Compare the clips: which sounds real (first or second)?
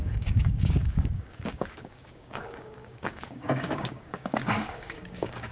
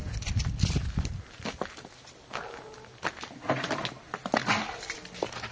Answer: second